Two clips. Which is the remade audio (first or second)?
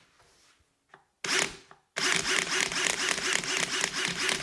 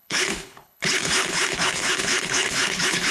second